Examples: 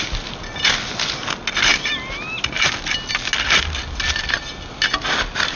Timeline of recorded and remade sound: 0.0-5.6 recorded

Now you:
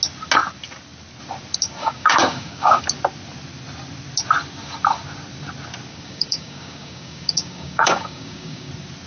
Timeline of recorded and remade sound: 0.0-1.8 recorded; 1.8-2.8 remade; 2.8-5.9 recorded; 5.9-8.7 remade; 8.7-9.1 recorded

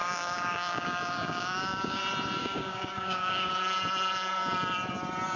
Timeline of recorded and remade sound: 0.0-2.0 remade; 2.0-2.4 recorded; 2.4-3.5 remade; 3.5-5.4 recorded

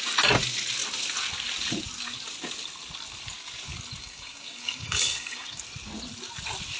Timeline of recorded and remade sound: 0.0-4.0 recorded; 4.0-5.6 remade; 5.6-6.8 recorded

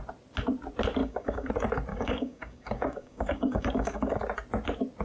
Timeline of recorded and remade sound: 0.0-1.0 recorded; 1.0-1.5 remade; 1.5-1.9 recorded; 1.9-4.2 remade; 4.2-5.0 recorded

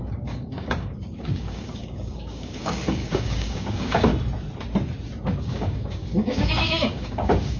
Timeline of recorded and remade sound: 0.0-4.1 remade; 4.1-5.4 recorded; 5.4-7.6 remade

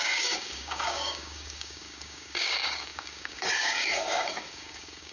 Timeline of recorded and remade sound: 0.0-5.1 remade

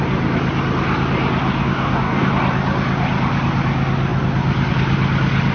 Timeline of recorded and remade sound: 0.0-1.5 recorded; 1.5-2.3 remade; 2.3-5.5 recorded